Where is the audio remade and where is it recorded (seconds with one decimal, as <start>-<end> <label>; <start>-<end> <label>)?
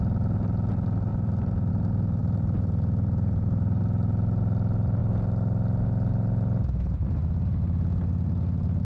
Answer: 0.0-1.1 recorded; 1.1-1.7 remade; 1.7-2.2 recorded; 2.2-3.8 remade; 3.8-8.8 recorded